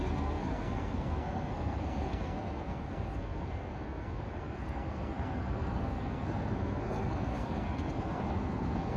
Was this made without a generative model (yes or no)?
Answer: no